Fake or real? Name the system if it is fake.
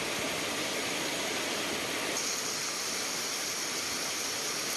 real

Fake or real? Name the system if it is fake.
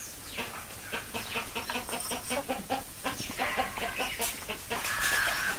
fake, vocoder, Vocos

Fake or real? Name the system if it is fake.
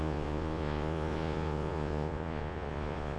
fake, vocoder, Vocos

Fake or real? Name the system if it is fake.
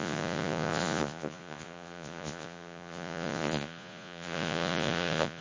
fake, vocoder, Vocos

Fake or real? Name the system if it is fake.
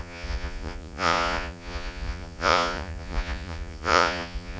fake, vocoder, Vocos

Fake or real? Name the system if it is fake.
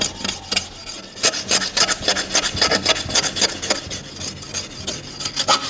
real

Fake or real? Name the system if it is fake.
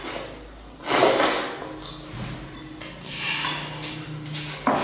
real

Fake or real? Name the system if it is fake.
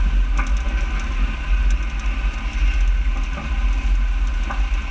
real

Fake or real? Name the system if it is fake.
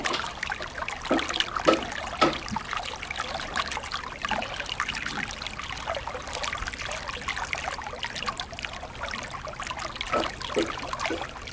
real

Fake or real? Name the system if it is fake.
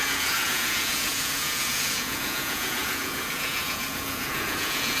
fake, vocoder, Vocos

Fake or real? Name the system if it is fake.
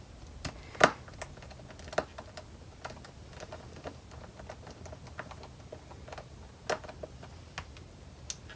real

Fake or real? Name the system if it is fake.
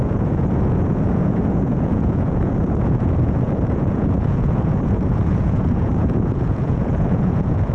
fake, vocoder, Vocos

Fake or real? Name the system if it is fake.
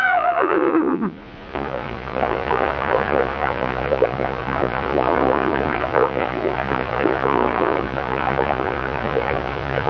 fake, vocoder, Vocos